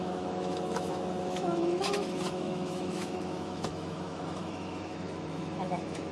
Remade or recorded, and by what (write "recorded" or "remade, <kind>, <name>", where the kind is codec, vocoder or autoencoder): remade, autoencoder, DAC-VAE